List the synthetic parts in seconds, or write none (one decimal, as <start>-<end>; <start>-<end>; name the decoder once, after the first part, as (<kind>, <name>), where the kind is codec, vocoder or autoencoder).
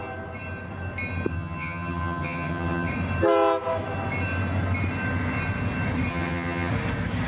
1.3-2.9 (vocoder, HiFi-GAN); 6.1-6.7